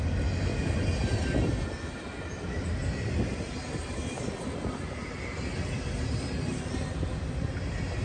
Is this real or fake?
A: real